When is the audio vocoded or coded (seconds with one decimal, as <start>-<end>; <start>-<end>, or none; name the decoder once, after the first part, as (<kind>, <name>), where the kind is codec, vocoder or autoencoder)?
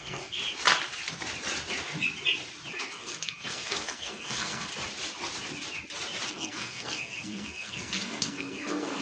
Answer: 0.0-0.4 (codec, SNAC); 2.8-4.7; 6.3-9.0